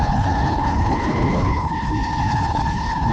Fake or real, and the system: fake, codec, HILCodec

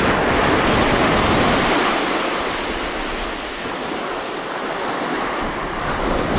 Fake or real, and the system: real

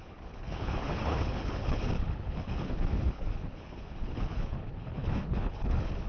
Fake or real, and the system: fake, codec, HILCodec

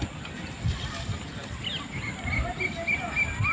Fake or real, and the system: real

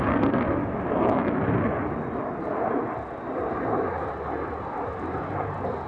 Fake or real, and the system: real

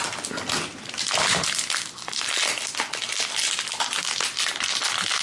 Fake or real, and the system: real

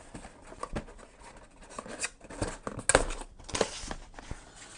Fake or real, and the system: real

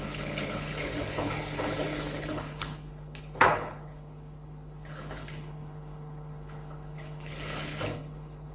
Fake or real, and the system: fake, codec, HILCodec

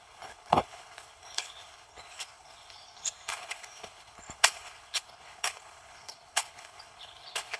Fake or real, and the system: fake, codec, HILCodec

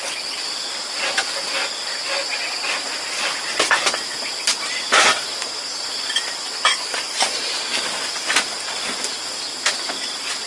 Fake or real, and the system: real